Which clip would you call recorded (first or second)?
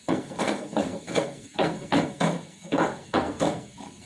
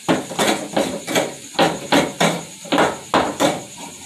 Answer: second